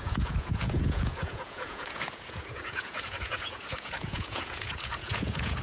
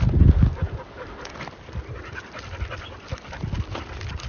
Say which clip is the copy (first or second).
first